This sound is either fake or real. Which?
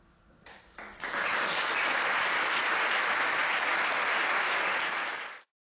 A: real